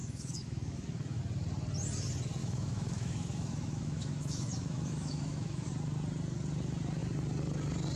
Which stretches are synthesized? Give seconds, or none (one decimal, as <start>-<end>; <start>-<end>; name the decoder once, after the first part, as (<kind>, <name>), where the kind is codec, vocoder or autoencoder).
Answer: 0.0-1.2 (autoencoder, DAC-VAE); 2.4-5.7